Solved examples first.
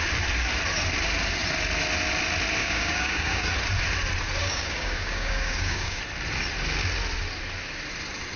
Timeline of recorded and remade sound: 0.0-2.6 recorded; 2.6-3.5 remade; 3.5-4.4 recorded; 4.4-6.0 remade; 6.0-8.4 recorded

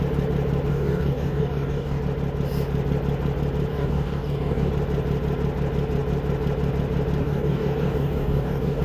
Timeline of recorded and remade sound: 0.0-0.7 recorded; 0.7-2.0 remade; 2.0-3.7 recorded; 3.7-4.7 remade; 4.7-7.2 recorded; 7.2-8.8 remade

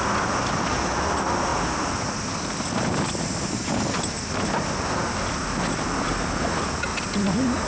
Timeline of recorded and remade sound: 0.0-7.7 recorded